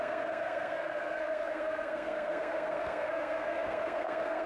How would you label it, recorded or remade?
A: remade